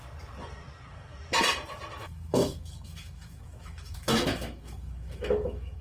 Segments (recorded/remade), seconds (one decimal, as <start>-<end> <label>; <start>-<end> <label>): 0.0-2.0 recorded; 2.0-5.8 remade